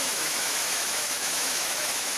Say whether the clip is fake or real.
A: fake